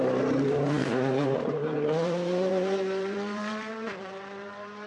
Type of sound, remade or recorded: remade